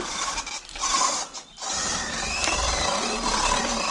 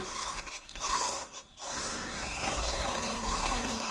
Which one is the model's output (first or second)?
second